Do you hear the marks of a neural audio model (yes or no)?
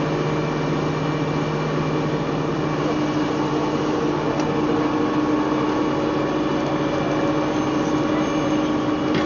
no